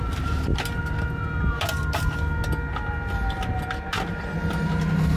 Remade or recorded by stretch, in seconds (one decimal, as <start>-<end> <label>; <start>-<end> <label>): 0.0-5.2 recorded